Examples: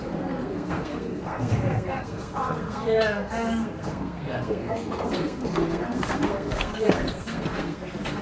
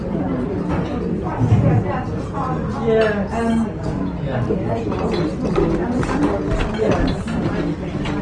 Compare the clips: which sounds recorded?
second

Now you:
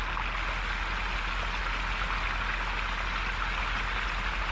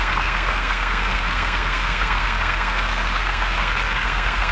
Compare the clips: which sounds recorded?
first